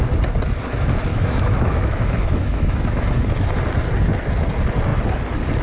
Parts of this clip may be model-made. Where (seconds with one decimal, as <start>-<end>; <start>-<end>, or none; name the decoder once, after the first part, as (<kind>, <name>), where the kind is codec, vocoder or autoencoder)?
1.1-3.1 (autoencoder, DAC-VAE)